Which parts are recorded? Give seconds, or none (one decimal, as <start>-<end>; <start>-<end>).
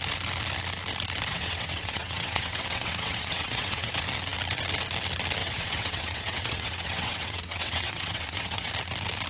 0.0-1.3; 3.9-5.4; 8.7-9.3